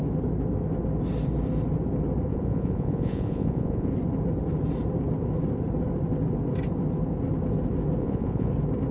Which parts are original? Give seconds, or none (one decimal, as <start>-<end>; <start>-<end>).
0.0-2.3; 3.9-8.0; 8.5-8.9

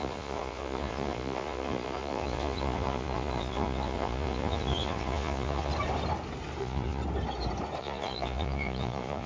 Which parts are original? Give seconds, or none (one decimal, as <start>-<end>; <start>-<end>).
5.7-6.6; 7.0-7.8

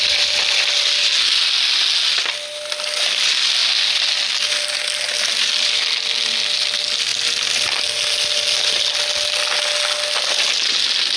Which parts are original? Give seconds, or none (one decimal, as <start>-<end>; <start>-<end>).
0.0-11.2

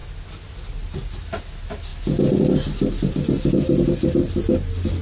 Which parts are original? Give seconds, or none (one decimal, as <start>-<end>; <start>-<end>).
0.0-5.0

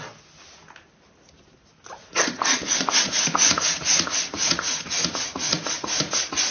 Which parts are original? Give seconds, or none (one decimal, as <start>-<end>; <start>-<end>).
0.0-2.1; 6.0-6.5